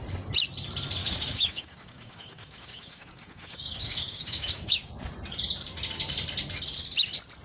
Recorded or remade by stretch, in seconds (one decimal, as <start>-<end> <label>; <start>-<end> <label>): 0.0-1.0 recorded; 1.0-4.9 remade; 4.9-7.4 recorded